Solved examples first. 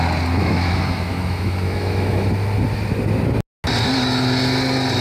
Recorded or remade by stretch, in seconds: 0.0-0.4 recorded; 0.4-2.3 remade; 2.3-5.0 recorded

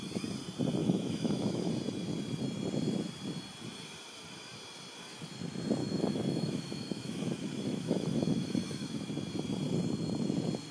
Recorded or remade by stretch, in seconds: 0.0-0.8 recorded; 0.8-1.7 remade; 1.7-5.8 recorded; 5.8-9.1 remade; 9.1-10.7 recorded

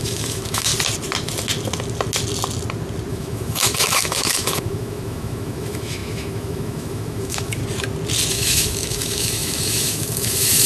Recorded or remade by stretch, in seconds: 0.0-0.7 remade; 0.7-3.1 recorded; 3.1-7.6 remade; 7.6-8.3 recorded; 8.3-10.7 remade

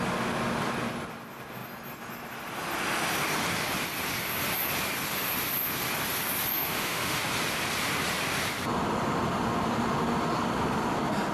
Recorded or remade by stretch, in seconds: 0.0-6.5 recorded; 6.5-7.2 remade; 7.2-11.3 recorded